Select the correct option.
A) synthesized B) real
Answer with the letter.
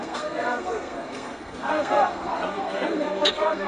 A